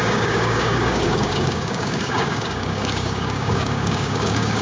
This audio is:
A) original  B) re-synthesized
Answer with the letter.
B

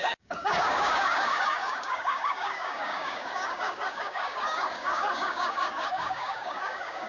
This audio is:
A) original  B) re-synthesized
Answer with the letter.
B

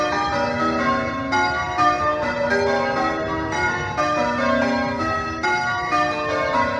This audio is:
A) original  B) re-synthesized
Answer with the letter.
A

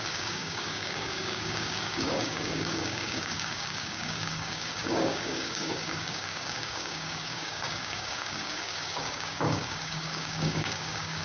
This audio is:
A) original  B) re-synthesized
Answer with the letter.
B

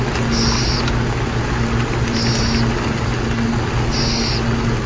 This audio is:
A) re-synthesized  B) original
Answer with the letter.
B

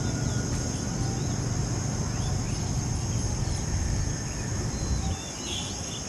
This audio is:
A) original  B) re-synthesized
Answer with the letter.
A